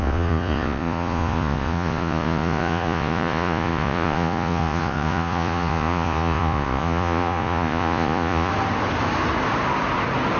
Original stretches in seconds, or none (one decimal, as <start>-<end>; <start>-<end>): 8.5-10.4